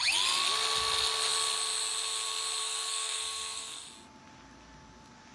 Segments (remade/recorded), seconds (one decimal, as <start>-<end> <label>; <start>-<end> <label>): 0.0-2.6 recorded; 2.6-3.9 remade; 3.9-5.3 recorded